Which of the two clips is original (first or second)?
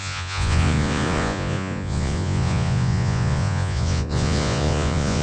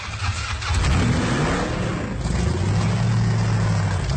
second